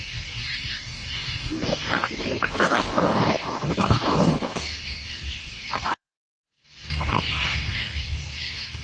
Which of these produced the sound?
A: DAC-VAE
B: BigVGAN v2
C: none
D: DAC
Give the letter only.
D